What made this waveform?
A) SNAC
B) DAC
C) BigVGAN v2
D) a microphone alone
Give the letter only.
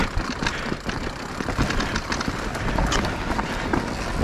D